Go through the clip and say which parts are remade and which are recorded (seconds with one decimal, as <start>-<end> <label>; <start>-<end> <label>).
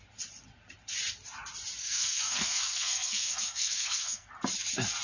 0.0-1.8 recorded; 1.8-4.3 remade; 4.3-5.0 recorded